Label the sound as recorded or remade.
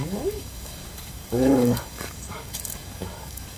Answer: remade